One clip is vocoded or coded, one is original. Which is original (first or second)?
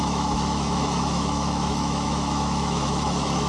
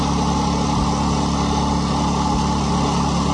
second